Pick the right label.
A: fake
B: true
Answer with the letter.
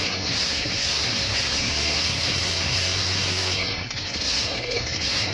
A